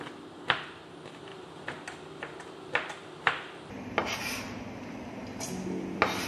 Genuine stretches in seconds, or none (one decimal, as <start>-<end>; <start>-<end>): 0.0-6.3